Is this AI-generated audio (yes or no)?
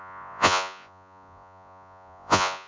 yes